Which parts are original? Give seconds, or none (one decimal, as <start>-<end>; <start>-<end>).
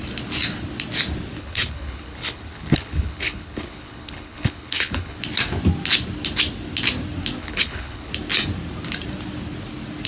0.0-1.4; 5.2-7.4; 8.1-10.1